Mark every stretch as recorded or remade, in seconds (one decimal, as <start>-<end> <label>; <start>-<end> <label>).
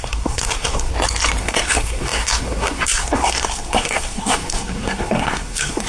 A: 0.0-0.9 remade; 0.9-1.4 recorded; 1.4-5.9 remade